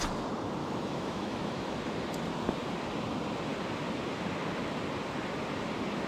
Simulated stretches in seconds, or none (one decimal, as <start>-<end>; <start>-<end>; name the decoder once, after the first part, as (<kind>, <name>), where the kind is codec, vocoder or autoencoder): 0.6-1.8 (autoencoder, DAC-VAE)